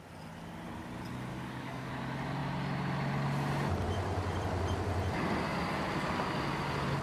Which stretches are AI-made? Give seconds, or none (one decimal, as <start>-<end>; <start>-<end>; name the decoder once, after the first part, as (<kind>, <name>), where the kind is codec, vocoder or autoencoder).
1.3-1.9 (codec, DAC)